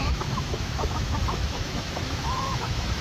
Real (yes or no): no